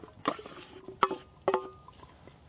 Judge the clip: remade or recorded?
recorded